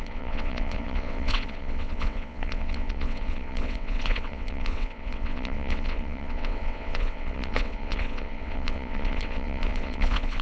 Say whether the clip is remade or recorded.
remade